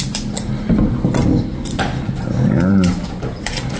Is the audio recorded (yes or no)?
yes